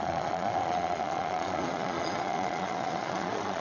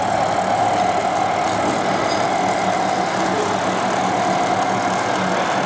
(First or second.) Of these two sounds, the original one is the second